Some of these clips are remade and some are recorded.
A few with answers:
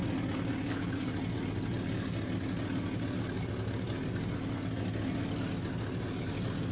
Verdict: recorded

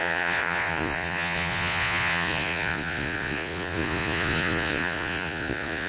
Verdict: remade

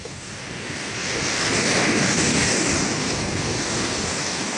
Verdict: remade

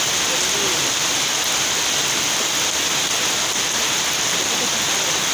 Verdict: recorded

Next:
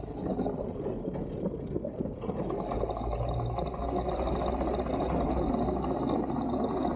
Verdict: recorded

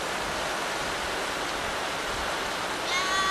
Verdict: recorded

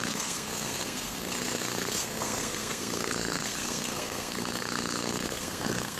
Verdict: remade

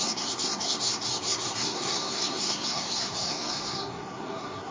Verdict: remade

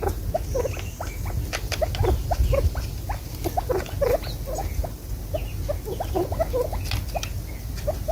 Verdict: recorded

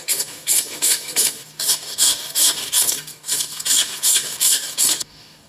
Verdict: remade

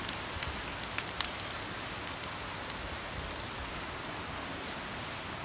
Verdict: recorded